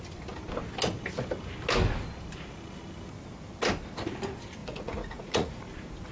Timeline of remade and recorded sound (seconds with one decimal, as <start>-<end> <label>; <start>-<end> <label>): 0.0-4.6 recorded; 4.6-5.6 remade; 5.6-6.1 recorded